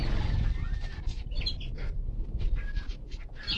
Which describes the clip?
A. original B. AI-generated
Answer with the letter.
A